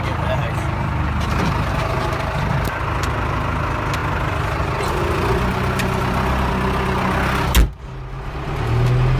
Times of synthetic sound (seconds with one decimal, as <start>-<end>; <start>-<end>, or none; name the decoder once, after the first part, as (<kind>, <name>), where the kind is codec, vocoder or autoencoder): 4.0-6.5 (vocoder, BigVGAN v2)